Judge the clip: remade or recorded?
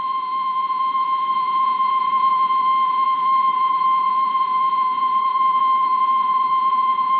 remade